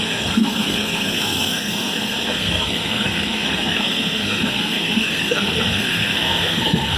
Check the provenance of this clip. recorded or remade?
remade